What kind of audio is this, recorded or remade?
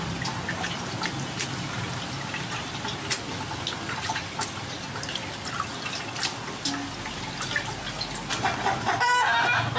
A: recorded